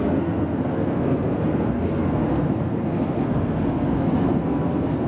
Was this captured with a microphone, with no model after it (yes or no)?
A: no